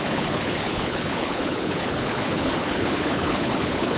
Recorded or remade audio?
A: remade